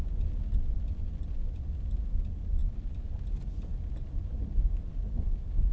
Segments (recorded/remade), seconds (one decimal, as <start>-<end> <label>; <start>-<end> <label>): 0.0-5.7 recorded